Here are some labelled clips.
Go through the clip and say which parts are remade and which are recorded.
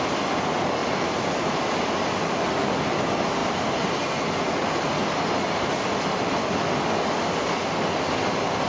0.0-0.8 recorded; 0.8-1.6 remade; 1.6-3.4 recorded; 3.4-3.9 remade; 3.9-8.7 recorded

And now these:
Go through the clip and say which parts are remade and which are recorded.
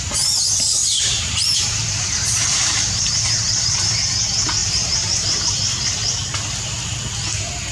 0.0-0.8 recorded; 0.8-3.9 remade; 3.9-4.6 recorded; 4.6-5.4 remade; 5.4-7.7 recorded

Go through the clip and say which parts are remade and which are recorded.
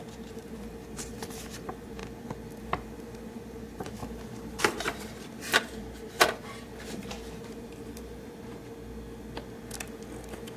0.0-2.0 remade; 2.0-2.6 recorded; 2.6-4.0 remade; 4.0-4.6 recorded; 4.6-8.6 remade; 8.6-10.6 recorded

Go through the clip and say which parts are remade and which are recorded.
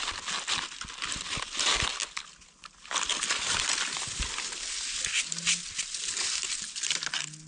0.0-7.5 recorded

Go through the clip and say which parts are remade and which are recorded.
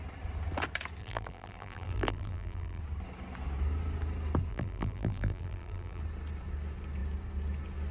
0.0-1.0 recorded; 1.0-2.8 remade; 2.8-4.5 recorded; 4.5-6.0 remade; 6.0-7.9 recorded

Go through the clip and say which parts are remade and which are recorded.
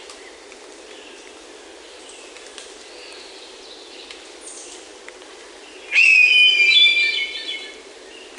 0.0-8.4 recorded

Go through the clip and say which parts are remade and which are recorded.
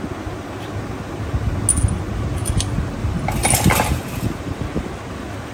0.0-3.0 recorded; 3.0-5.0 remade; 5.0-5.5 recorded